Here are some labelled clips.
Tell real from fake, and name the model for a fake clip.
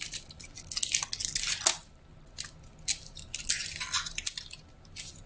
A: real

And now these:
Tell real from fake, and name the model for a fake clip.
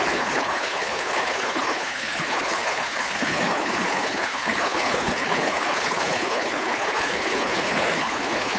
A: fake, codec, HILCodec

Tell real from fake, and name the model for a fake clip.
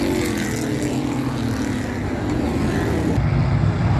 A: real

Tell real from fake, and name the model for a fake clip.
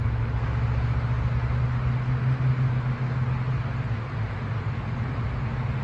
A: real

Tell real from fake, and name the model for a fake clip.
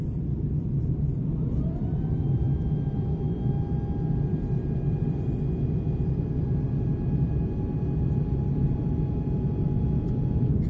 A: real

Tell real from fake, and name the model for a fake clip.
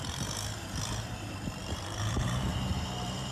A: fake, vocoder, BigVGAN v2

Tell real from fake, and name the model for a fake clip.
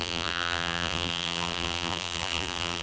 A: fake, vocoder, BigVGAN v2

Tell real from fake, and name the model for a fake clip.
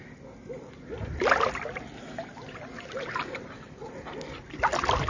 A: real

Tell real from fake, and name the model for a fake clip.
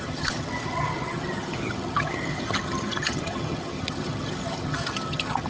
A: fake, vocoder, HiFi-GAN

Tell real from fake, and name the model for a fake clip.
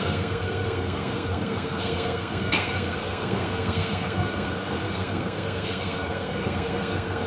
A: fake, codec, SNAC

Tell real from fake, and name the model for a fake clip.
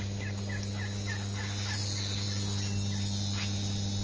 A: real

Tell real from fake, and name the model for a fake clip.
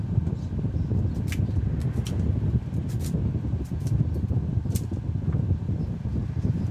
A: real